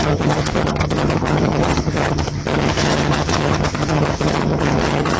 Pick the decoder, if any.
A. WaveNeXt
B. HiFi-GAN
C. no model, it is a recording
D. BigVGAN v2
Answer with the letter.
B